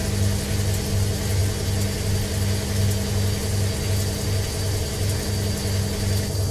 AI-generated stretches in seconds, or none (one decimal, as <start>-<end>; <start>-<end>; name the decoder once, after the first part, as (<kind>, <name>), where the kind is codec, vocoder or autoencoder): none